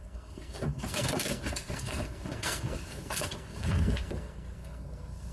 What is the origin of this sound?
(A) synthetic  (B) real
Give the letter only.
A